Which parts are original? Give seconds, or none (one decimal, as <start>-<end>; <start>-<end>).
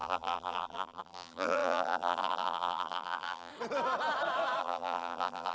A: 3.5-4.6